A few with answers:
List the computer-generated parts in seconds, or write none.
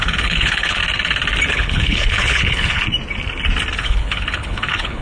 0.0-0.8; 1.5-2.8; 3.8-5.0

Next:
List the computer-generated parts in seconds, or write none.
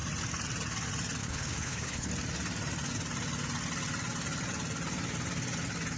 1.2-2.1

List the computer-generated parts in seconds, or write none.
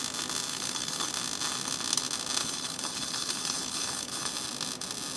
0.5-1.1; 2.4-4.3